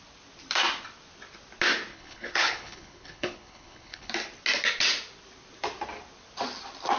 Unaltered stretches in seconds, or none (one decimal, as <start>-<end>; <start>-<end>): 0.0-1.9; 4.1-7.0